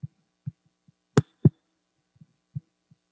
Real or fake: real